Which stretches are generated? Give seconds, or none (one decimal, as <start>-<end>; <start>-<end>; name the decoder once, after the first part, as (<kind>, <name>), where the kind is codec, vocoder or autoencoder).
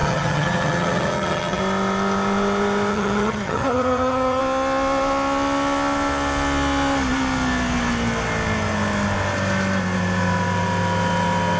0.0-1.6 (vocoder, HiFi-GAN); 2.9-4.4